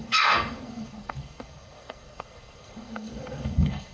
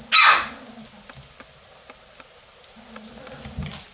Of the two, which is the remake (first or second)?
first